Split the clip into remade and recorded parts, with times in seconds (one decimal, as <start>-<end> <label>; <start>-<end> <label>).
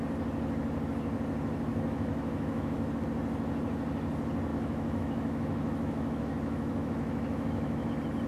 0.0-1.7 recorded; 1.7-2.9 remade; 2.9-4.5 recorded; 4.5-7.9 remade; 7.9-8.3 recorded